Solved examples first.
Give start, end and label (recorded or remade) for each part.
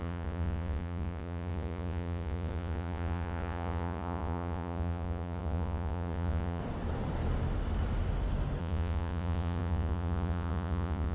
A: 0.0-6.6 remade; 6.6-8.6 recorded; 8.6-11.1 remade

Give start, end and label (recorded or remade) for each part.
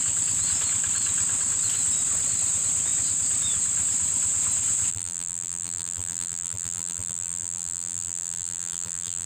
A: 0.0-4.9 recorded; 4.9-9.3 remade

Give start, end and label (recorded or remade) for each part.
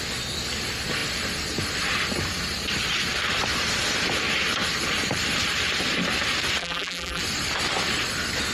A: 0.0-6.6 recorded; 6.6-7.2 remade; 7.2-8.5 recorded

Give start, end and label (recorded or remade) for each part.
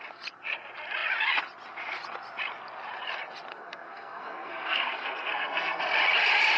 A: 0.0-3.5 recorded; 3.5-5.8 remade; 5.8-6.6 recorded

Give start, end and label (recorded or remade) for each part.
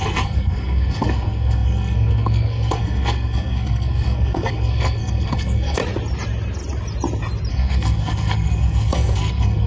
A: 0.0-5.8 remade; 5.8-7.5 recorded; 7.5-9.7 remade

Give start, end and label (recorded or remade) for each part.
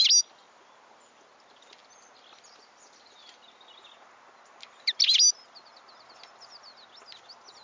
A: 0.0-7.6 recorded